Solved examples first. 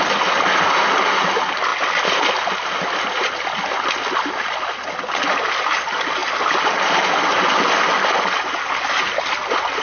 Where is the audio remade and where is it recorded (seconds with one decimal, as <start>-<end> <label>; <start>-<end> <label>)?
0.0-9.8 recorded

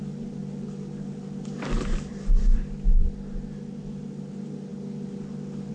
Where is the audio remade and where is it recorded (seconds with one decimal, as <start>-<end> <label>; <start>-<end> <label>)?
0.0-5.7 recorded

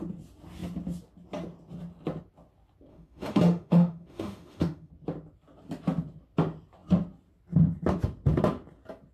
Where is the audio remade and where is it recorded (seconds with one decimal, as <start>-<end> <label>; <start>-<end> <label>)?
0.0-2.9 recorded; 2.9-4.9 remade; 4.9-9.1 recorded